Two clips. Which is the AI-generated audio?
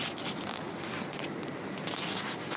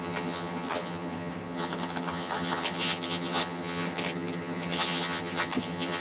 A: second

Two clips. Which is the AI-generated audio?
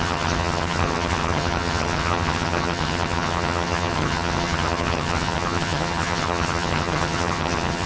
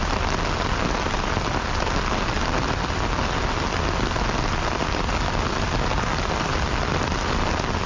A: first